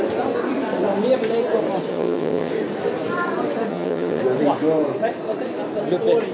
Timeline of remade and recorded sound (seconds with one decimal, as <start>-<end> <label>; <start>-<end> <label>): 0.0-1.9 recorded; 1.9-2.5 remade; 2.5-3.7 recorded; 3.7-4.2 remade; 4.2-6.3 recorded